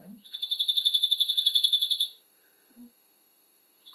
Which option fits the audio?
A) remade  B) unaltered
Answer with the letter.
A